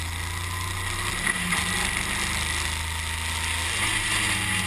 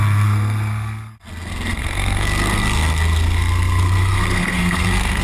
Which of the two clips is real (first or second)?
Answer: first